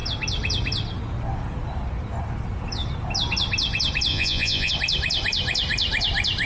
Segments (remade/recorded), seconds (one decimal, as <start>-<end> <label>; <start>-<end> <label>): 0.0-4.1 recorded; 4.1-4.7 remade; 4.7-6.5 recorded